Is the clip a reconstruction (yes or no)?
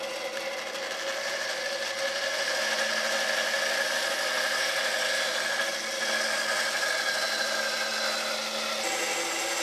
no